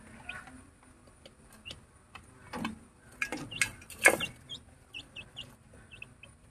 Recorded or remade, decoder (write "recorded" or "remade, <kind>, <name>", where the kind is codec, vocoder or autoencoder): recorded